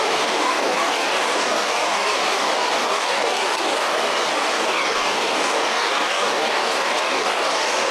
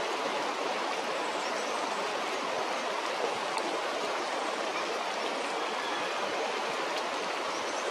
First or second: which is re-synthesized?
first